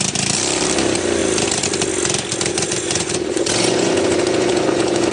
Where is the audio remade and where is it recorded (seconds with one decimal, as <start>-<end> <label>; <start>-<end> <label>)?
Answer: 0.0-2.5 recorded; 2.5-5.1 remade